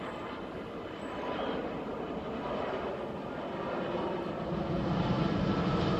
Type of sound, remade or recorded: recorded